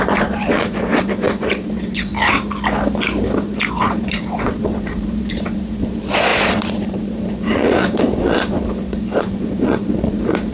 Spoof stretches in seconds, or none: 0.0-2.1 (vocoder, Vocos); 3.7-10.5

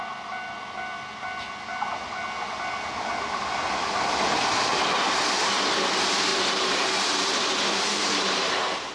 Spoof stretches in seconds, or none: 6.3-8.9 (vocoder, BigVGAN v2)

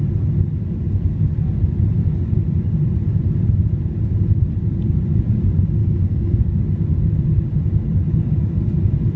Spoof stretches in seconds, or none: 5.8-6.4 (codec, SNAC)

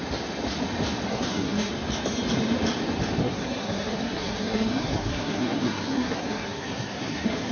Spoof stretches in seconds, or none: 1.1-1.7 (codec, SNAC); 3.2-7.5

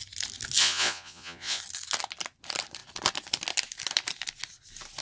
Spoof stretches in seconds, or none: 0.6-1.6 (vocoder, Vocos)